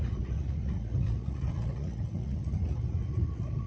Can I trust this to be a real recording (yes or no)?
no